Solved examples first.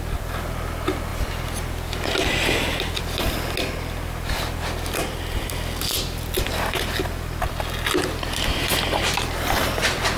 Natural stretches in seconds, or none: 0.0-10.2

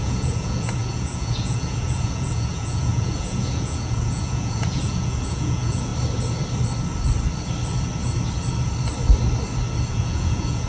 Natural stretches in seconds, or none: 5.9-9.9

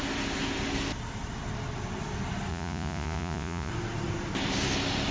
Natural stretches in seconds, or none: 0.0-2.5; 3.7-5.1

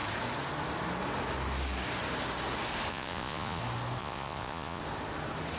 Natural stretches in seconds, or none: 0.0-2.9; 3.6-4.0; 4.8-5.6

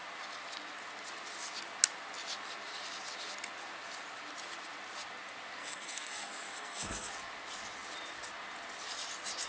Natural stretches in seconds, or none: 0.0-5.6; 7.1-9.5

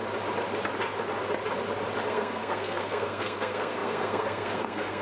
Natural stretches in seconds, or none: 0.0-2.1